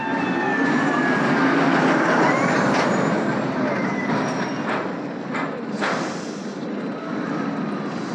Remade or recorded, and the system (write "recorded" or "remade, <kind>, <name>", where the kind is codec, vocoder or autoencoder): recorded